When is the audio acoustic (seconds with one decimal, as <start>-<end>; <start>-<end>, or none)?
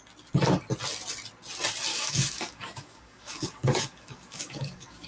0.0-1.9